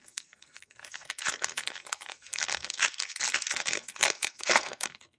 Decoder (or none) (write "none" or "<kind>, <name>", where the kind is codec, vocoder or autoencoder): codec, SNAC